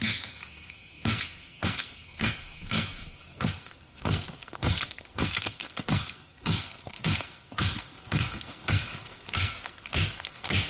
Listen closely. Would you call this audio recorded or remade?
remade